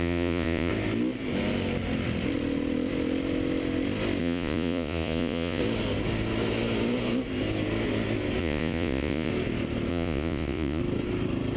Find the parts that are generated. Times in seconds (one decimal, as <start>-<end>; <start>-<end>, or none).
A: 0.0-0.7; 4.2-5.6; 8.4-9.3; 9.9-10.8